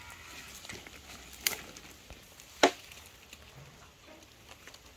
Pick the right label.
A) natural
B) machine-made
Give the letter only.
A